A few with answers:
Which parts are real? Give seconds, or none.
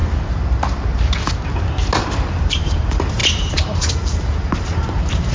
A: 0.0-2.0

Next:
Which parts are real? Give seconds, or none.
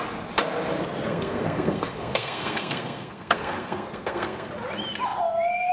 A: 0.0-1.1; 4.5-5.7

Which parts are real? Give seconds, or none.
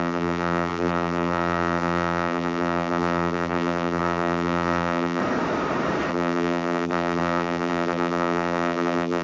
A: 5.2-6.1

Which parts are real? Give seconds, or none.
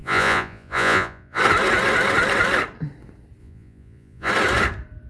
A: 1.4-3.4; 4.3-5.1